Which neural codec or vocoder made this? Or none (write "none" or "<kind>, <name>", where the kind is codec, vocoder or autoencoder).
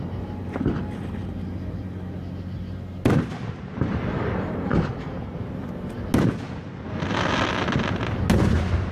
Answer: none